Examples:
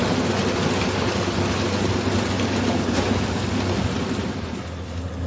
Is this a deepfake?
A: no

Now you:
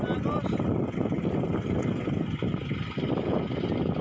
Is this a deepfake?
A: no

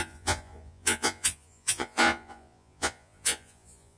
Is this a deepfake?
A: yes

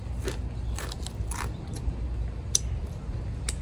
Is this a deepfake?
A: no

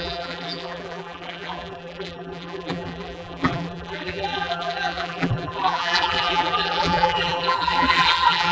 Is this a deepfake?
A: yes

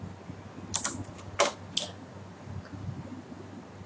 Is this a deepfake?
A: no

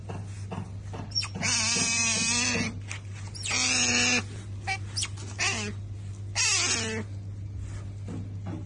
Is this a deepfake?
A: no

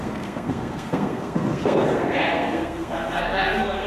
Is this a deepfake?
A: yes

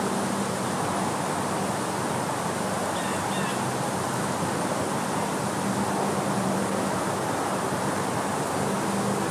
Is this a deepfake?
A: no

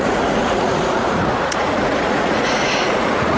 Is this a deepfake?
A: yes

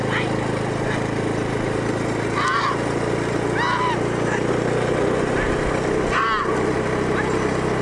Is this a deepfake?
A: no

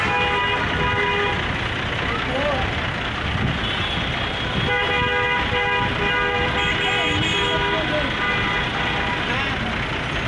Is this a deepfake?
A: no